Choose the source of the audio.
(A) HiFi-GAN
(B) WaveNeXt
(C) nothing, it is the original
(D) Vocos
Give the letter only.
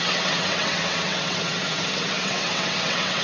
B